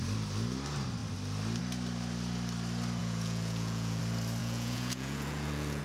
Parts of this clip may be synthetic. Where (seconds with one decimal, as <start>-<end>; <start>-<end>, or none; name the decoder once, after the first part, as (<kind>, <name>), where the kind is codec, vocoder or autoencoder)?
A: 3.0-4.0 (vocoder, Vocos); 4.4-5.8

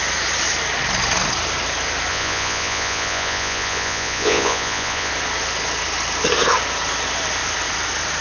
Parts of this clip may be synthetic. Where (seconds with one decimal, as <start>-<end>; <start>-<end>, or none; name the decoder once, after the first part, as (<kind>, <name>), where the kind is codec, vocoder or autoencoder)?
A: 2.1-5.1 (vocoder, Vocos)

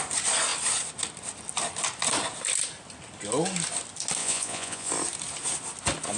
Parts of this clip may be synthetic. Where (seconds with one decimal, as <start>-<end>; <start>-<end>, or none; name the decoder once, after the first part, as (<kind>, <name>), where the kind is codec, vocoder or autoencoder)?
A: 4.2-4.9 (vocoder, Vocos)

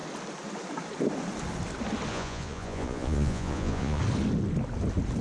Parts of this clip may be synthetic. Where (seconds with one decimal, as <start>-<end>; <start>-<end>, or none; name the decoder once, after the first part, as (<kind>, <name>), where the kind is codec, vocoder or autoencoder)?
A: 2.1-4.0 (vocoder, Vocos)